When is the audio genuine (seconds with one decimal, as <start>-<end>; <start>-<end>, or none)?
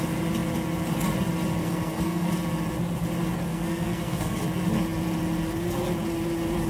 0.0-1.6; 2.3-3.5; 4.4-6.7